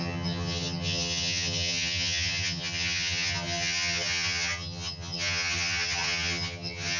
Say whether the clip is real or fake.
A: fake